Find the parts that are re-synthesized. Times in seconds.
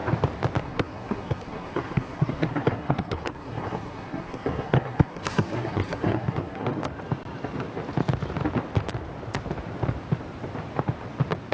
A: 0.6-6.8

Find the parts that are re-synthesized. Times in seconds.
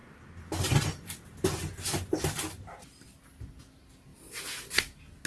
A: none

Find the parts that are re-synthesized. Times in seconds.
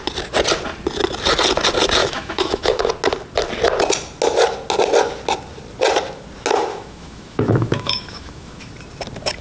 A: 2.0-2.9; 6.7-8.7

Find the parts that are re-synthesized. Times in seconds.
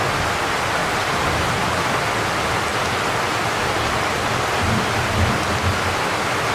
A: 0.8-1.5